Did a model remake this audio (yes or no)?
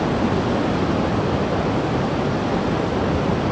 no